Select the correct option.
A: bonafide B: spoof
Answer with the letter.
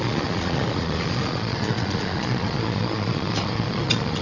B